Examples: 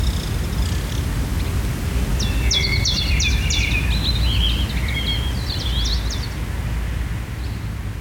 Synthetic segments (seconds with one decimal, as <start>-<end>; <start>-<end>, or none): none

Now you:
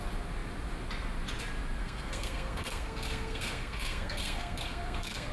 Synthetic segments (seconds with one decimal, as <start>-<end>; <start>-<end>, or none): 1.8-5.3

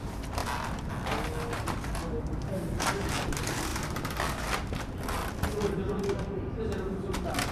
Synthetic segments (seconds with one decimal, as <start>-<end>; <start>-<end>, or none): none

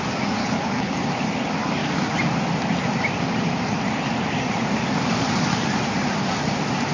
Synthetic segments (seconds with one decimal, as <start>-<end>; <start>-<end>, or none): 0.4-0.9